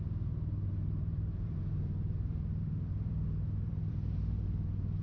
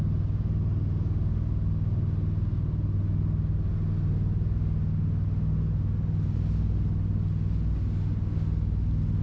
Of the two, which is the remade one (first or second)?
first